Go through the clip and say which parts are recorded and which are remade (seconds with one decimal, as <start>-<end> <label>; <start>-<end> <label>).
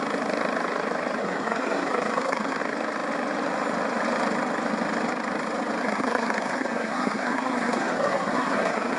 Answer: 0.0-1.2 recorded; 1.2-2.6 remade; 2.6-5.8 recorded; 5.8-9.0 remade